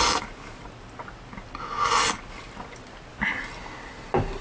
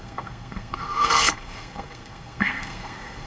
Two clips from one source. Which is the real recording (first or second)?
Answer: first